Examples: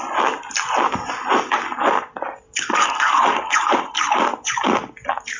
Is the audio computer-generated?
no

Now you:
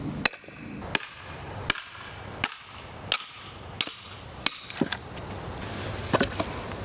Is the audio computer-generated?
no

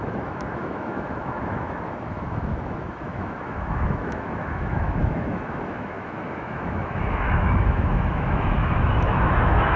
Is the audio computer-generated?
yes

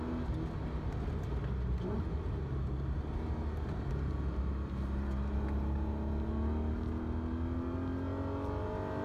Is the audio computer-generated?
no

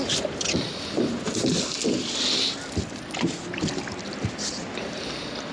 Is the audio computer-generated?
no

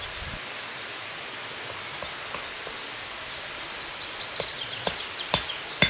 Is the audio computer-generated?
no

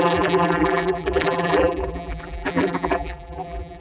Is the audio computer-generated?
yes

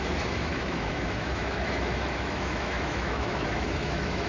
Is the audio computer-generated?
yes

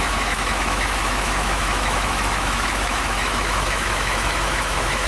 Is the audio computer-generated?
yes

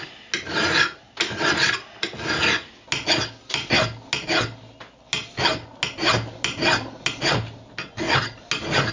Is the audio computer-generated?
no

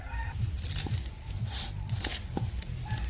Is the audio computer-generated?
no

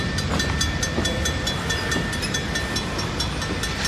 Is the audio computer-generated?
no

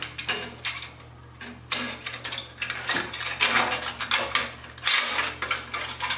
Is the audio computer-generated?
no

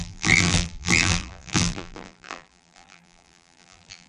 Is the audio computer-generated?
yes